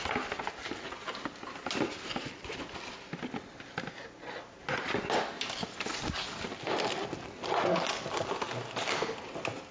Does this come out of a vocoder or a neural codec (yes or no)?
no